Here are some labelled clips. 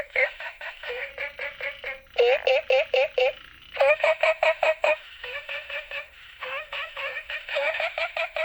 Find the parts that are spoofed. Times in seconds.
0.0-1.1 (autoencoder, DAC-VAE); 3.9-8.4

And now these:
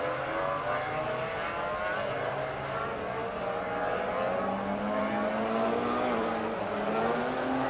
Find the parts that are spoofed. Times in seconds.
none

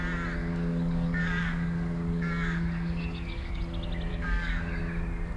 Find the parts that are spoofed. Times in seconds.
0.4-3.6 (codec, DAC); 4.1-4.8

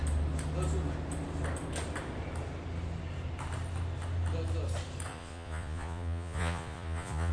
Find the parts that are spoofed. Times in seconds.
5.1-7.3 (vocoder, Vocos)